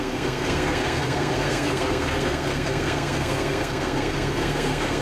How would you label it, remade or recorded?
remade